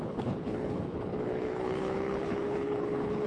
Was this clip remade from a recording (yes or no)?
yes